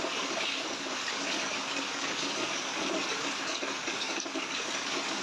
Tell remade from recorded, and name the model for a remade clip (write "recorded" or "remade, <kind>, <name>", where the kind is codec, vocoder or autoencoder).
remade, codec, DAC